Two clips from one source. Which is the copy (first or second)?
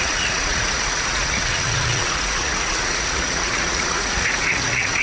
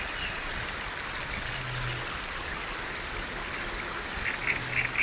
first